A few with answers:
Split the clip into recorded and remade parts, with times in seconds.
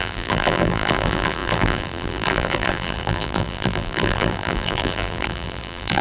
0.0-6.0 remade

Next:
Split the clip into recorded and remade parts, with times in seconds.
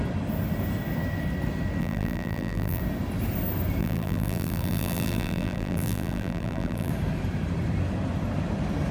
0.0-1.8 recorded; 1.8-2.8 remade; 2.8-3.8 recorded; 3.8-6.9 remade; 6.9-8.9 recorded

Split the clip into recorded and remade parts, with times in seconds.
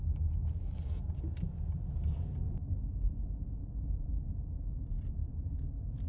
0.0-2.0 recorded; 2.0-6.1 remade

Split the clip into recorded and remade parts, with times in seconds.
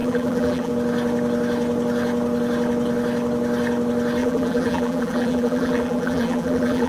0.0-0.7 remade; 0.7-4.2 recorded; 4.2-6.9 remade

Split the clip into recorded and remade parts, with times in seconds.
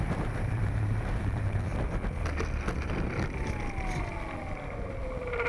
0.0-1.7 remade; 1.7-5.0 recorded; 5.0-5.5 remade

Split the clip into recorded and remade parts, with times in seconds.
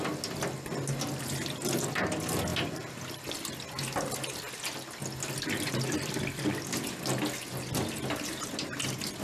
0.0-9.2 recorded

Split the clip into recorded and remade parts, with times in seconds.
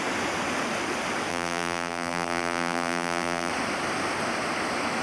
0.0-1.3 recorded; 1.3-3.5 remade; 3.5-5.0 recorded